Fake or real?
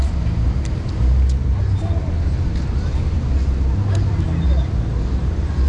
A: real